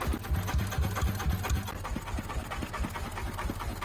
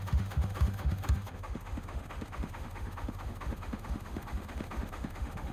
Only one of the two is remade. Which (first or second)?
second